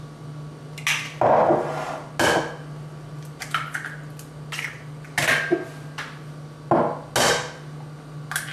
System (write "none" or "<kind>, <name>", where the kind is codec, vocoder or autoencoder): none